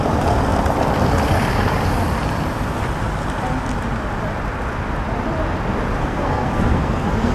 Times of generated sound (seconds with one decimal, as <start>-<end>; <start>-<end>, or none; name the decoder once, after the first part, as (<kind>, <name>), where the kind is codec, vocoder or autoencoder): 6.0-7.3 (codec, SNAC)